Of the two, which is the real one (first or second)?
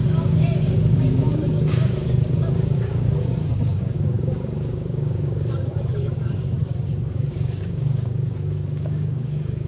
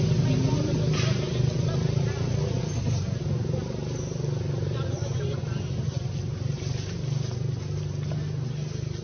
second